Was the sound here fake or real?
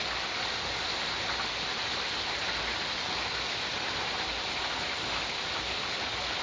real